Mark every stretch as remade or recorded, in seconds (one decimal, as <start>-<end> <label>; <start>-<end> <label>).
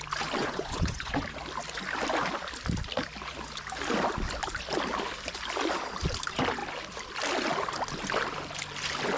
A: 0.0-0.4 recorded; 0.4-1.2 remade; 1.2-9.2 recorded